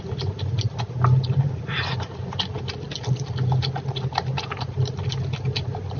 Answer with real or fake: real